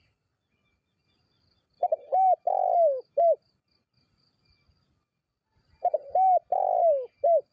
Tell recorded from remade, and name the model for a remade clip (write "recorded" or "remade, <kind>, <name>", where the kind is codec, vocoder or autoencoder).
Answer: recorded